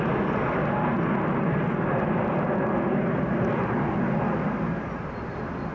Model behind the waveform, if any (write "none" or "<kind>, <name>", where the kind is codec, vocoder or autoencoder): none